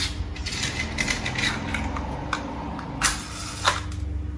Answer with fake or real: real